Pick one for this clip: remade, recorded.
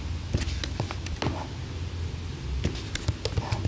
recorded